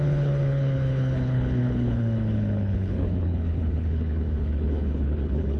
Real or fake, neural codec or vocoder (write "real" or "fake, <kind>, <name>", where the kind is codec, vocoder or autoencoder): fake, codec, HILCodec